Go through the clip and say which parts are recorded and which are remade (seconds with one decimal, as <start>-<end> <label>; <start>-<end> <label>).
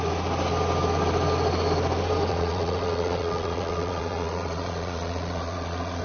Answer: 0.0-2.3 recorded; 2.3-6.0 remade